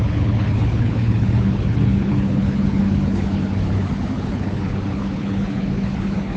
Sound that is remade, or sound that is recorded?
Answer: remade